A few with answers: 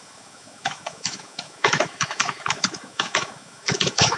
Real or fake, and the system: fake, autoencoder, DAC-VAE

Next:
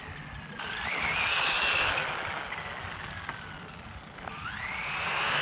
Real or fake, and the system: real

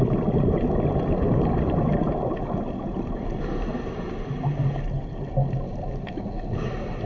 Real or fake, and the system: real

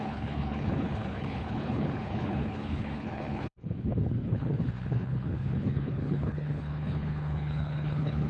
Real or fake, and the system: fake, codec, HILCodec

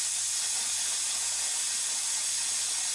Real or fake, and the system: real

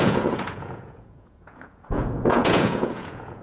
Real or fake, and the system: fake, vocoder, Vocos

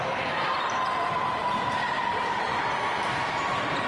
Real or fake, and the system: fake, vocoder, BigVGAN v2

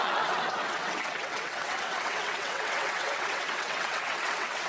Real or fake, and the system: fake, vocoder, WaveNeXt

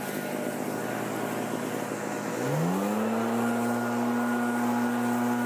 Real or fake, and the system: real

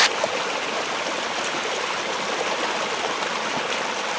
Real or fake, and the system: real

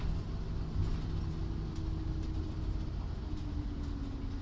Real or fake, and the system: real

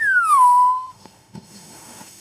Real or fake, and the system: fake, autoencoder, DAC-VAE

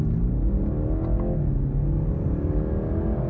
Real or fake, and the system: real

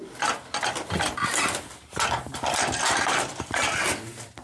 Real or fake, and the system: real